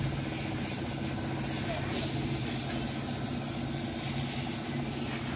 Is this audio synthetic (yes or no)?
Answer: no